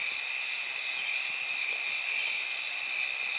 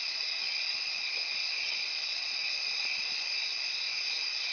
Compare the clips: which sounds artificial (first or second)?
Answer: second